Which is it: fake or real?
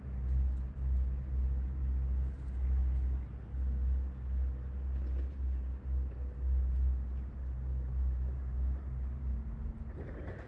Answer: real